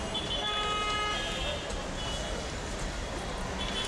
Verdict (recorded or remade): recorded